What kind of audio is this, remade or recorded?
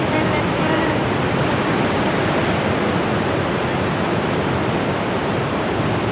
recorded